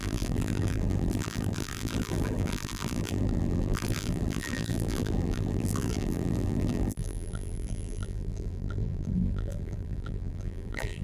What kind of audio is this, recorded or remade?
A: remade